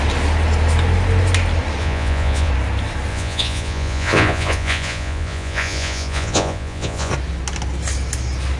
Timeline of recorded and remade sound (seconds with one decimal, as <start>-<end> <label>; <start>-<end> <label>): 0.0-1.8 recorded; 1.8-2.5 remade; 2.5-3.1 recorded; 3.1-7.1 remade; 7.1-8.6 recorded